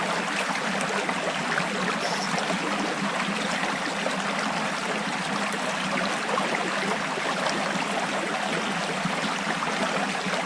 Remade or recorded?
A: recorded